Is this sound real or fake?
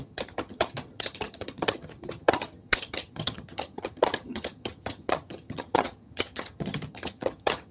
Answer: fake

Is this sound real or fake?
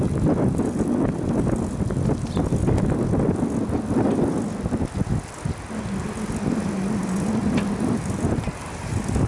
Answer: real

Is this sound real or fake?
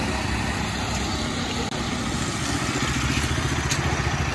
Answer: real